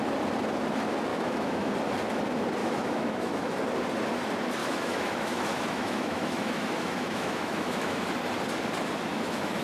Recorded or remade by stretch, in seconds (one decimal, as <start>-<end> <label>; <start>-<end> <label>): 0.0-1.1 recorded; 1.1-1.7 remade; 1.7-2.6 recorded; 2.6-3.5 remade; 3.5-4.6 recorded; 4.6-8.1 remade; 8.1-9.1 recorded; 9.1-9.6 remade